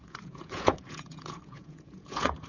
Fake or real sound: fake